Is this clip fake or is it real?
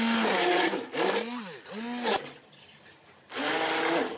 real